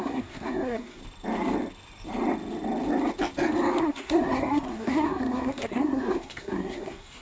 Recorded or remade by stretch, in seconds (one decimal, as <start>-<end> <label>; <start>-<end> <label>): 0.0-1.0 remade; 1.0-3.8 recorded; 3.8-7.2 remade